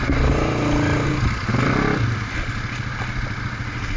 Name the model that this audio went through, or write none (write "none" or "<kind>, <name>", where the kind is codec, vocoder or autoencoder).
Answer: none